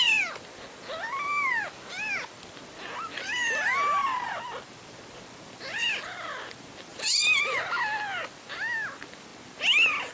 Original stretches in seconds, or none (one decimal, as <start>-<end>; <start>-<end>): 0.0-6.9; 7.6-10.1